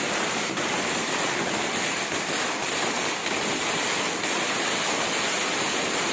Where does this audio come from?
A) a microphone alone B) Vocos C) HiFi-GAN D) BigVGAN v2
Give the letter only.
A